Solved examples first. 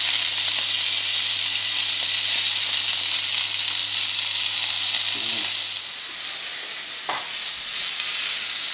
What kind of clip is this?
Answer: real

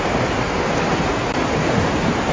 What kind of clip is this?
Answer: real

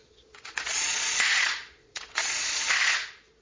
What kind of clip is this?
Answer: fake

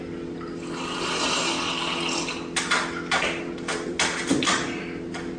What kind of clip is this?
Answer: real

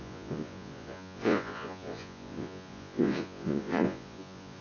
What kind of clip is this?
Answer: fake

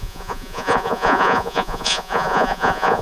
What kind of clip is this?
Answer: fake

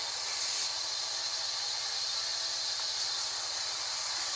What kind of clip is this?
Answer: real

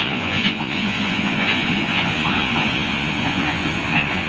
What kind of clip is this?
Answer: fake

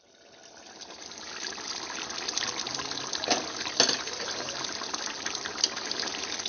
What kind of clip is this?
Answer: real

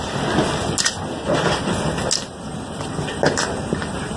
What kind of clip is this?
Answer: real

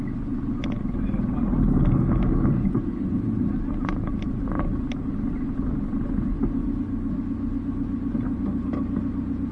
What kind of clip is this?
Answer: real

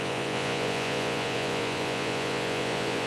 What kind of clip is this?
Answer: fake